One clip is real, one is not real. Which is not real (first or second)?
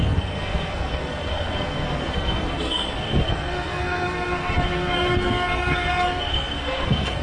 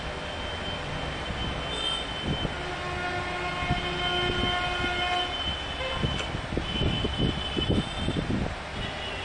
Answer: first